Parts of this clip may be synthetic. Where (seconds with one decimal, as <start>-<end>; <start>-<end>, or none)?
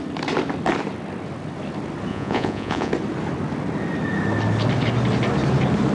2.1-2.9